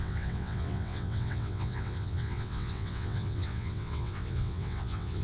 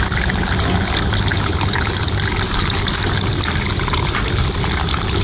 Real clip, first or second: second